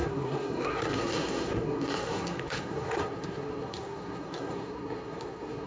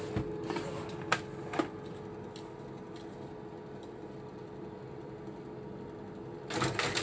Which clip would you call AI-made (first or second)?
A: first